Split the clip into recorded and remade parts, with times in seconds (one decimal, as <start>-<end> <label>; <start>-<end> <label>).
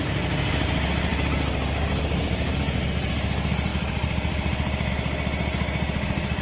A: 0.0-6.4 recorded